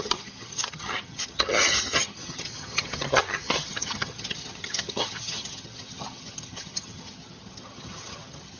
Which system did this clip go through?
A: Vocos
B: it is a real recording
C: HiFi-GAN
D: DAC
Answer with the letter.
C